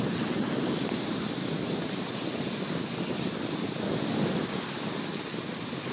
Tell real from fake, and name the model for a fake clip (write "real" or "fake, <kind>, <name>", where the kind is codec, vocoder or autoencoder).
real